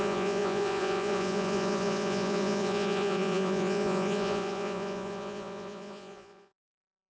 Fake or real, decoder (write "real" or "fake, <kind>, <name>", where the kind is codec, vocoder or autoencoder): fake, vocoder, Vocos